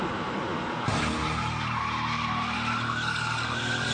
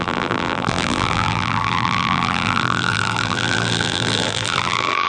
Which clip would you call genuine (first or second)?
first